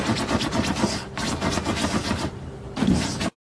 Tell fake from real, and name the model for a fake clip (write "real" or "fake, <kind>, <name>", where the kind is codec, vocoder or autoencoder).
real